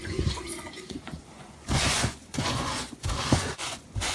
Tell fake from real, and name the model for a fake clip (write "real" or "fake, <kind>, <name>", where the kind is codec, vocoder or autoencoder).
fake, vocoder, Vocos